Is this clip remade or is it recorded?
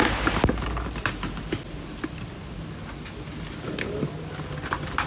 recorded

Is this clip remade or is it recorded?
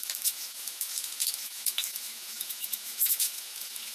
remade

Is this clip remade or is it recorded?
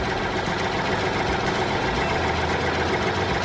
recorded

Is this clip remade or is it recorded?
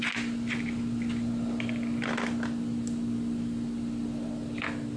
recorded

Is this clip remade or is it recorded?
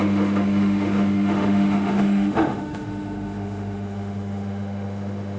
remade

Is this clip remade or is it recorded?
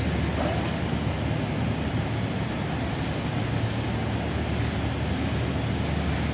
recorded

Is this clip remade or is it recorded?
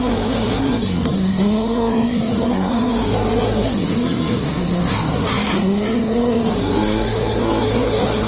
remade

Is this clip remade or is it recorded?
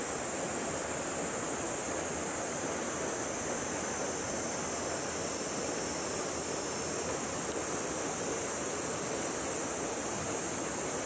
recorded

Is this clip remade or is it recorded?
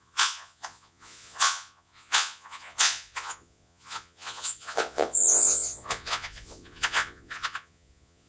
remade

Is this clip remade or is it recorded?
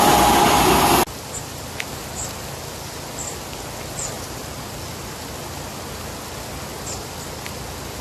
recorded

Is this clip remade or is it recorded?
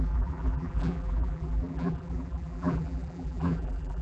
remade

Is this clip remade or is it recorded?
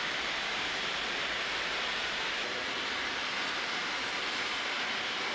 remade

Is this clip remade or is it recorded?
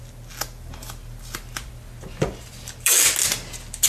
recorded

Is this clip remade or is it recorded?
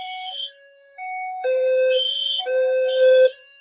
remade